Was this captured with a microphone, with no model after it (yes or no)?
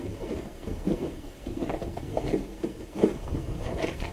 no